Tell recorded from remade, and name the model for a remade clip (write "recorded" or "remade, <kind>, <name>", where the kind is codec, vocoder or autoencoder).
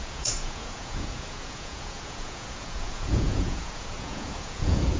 remade, vocoder, Vocos